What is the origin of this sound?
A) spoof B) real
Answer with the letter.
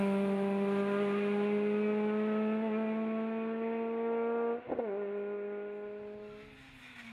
B